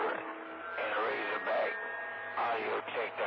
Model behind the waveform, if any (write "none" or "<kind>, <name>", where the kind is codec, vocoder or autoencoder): none